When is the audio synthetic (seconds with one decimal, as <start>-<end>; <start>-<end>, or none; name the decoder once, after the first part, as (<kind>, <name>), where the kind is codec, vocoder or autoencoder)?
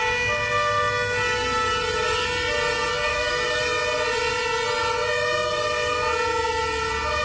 3.1-3.6 (autoencoder, DAC-VAE)